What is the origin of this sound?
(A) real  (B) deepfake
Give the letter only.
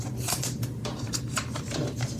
B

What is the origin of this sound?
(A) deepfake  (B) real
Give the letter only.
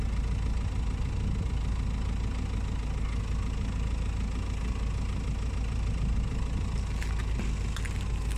B